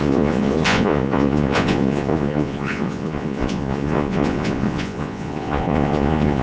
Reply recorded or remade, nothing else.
remade